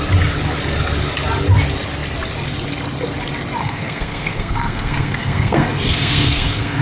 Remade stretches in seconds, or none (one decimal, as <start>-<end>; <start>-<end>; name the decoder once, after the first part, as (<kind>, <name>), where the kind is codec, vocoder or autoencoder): 3.6-6.8 (codec, SNAC)

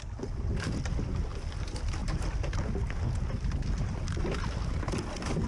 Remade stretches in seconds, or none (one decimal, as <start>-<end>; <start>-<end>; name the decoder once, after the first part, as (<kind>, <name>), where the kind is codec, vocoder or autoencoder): none

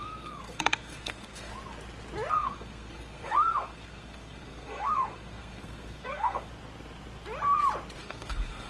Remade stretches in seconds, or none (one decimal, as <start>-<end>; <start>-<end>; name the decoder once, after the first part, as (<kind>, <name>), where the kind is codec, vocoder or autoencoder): 0.0-1.5 (codec, SNAC); 2.3-6.5; 8.0-8.7

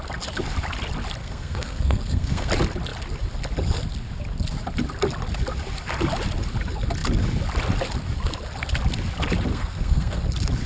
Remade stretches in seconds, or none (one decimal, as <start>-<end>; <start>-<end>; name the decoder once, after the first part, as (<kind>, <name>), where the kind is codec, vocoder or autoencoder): 1.2-2.5 (codec, SNAC); 9.5-10.2